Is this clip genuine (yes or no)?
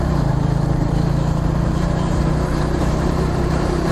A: no